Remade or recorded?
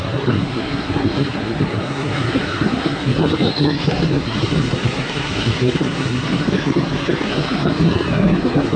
remade